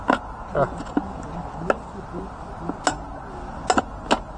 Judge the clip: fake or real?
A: real